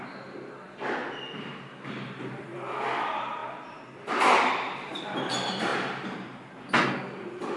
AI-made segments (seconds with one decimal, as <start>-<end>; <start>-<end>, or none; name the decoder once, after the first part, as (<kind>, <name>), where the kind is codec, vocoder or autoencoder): 0.0-1.0 (vocoder, BigVGAN v2); 2.4-5.7; 7.0-7.6